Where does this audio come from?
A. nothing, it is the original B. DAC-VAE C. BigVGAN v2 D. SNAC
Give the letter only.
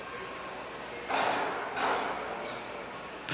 A